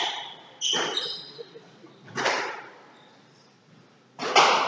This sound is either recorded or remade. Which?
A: recorded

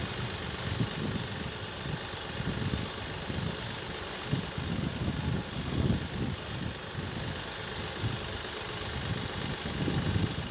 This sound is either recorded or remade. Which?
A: recorded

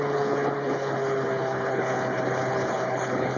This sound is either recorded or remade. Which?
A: remade